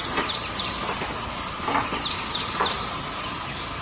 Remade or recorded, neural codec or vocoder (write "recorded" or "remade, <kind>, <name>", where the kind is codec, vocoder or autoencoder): recorded